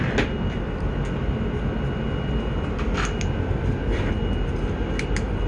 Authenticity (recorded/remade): recorded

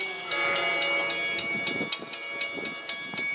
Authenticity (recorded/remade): recorded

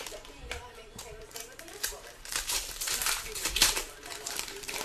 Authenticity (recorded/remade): remade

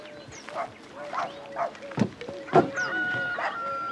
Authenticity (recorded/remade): recorded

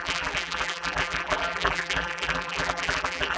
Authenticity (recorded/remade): remade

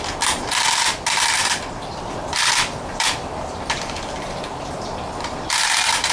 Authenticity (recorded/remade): remade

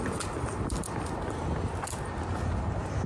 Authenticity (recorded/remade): recorded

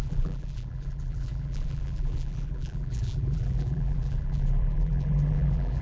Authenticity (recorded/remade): remade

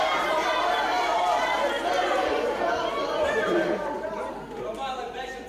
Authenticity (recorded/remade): remade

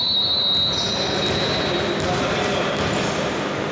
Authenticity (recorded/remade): recorded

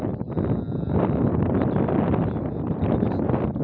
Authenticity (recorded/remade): recorded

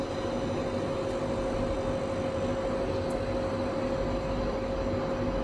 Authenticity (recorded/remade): recorded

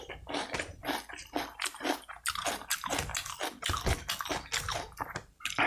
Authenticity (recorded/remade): recorded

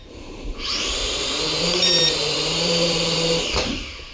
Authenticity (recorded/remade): remade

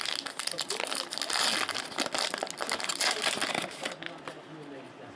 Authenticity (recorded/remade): recorded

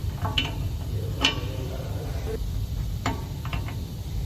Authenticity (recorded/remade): remade